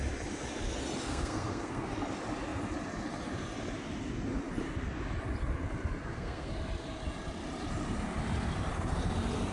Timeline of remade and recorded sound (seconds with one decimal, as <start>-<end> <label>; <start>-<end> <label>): 0.0-1.1 recorded; 1.1-1.9 remade; 1.9-6.0 recorded; 6.0-6.5 remade; 6.5-9.5 recorded